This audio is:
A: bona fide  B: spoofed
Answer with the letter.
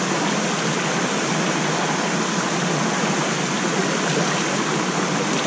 A